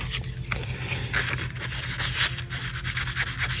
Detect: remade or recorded recorded